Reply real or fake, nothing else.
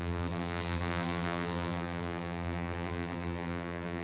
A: fake